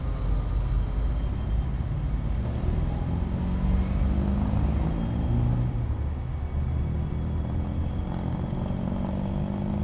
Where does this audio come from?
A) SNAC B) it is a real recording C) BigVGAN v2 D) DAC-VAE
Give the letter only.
B